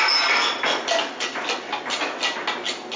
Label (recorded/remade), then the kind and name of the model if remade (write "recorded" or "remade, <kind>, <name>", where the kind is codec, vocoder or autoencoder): recorded